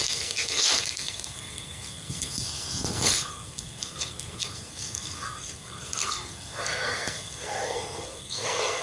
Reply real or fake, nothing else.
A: fake